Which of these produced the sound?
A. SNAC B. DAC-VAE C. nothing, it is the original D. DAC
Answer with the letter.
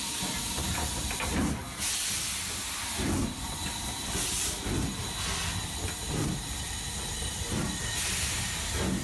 C